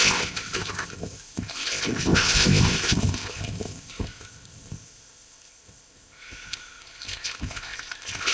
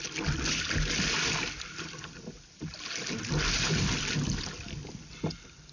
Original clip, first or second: second